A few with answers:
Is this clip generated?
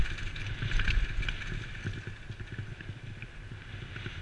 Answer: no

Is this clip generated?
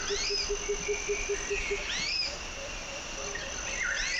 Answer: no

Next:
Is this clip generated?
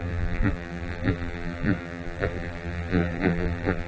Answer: yes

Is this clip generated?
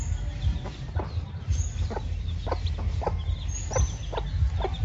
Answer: no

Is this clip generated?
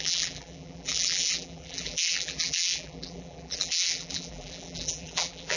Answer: yes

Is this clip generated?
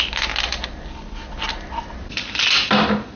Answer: no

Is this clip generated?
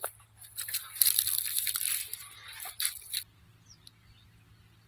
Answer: no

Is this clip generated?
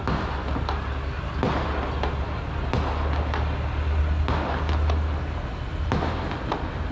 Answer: no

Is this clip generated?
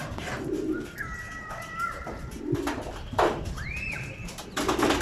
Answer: no